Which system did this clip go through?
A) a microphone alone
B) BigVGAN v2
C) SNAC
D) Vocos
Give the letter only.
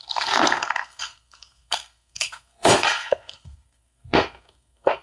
C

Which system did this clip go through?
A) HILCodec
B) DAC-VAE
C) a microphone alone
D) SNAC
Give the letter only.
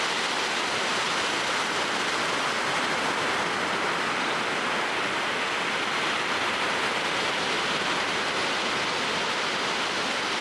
C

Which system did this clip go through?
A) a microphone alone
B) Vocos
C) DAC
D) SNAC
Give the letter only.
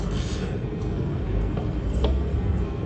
D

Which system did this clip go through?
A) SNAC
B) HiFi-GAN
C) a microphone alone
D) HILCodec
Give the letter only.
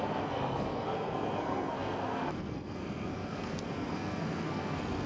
A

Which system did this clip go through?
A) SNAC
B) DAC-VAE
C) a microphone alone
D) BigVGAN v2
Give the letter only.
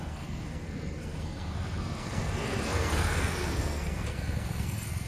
A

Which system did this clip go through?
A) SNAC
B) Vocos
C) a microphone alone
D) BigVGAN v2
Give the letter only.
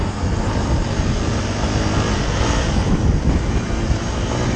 C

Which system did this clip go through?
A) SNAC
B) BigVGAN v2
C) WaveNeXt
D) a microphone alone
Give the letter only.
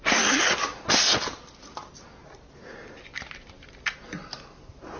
D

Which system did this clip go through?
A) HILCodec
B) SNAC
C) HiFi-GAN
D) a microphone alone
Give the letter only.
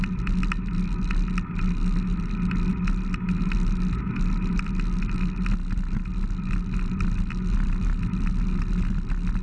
D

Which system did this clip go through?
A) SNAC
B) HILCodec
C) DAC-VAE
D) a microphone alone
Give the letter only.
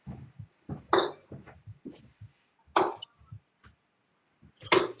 D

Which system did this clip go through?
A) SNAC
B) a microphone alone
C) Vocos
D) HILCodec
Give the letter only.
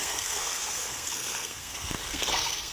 A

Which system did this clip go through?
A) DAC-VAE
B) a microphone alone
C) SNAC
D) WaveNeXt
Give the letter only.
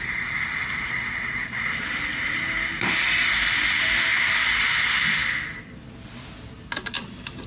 B